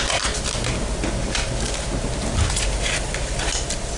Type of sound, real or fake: real